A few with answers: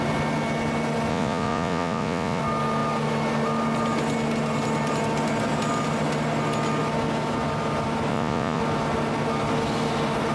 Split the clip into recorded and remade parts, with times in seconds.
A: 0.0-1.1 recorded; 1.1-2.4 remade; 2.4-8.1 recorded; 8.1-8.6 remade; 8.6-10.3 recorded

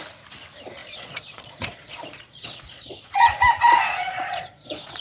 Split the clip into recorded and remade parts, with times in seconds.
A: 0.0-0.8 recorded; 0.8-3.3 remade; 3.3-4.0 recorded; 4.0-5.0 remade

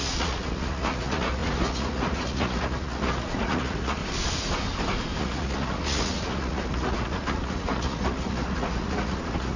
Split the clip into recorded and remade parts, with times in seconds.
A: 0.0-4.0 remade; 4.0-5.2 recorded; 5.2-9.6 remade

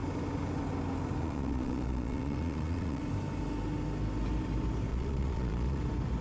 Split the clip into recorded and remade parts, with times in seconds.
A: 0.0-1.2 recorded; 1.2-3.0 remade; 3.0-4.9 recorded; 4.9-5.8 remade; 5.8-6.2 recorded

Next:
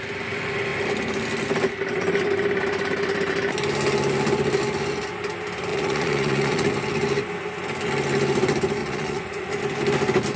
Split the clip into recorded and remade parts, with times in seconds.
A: 0.0-5.7 recorded; 5.7-6.7 remade; 6.7-8.8 recorded; 8.8-9.5 remade; 9.5-10.4 recorded

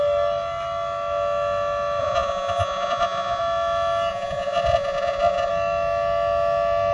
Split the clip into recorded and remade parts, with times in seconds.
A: 0.0-2.0 recorded; 2.0-3.4 remade; 3.4-4.1 recorded; 4.1-5.5 remade; 5.5-6.9 recorded